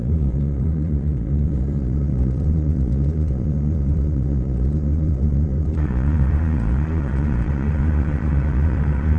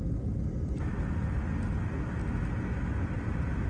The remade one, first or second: first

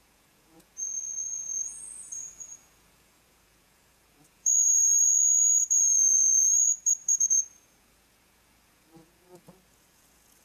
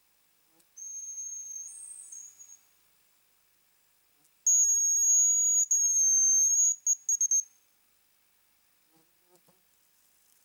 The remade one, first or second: first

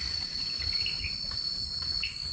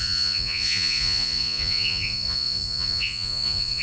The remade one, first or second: second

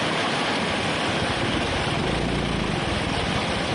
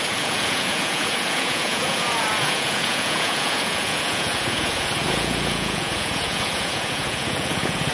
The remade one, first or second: second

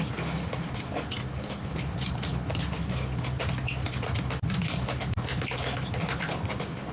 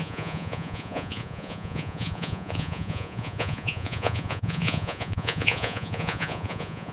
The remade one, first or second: second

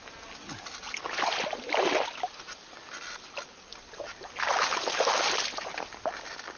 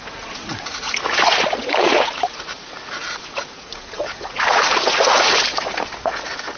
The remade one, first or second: second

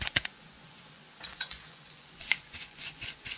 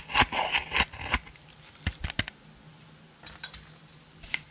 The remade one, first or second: first